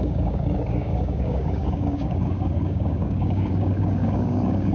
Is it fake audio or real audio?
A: fake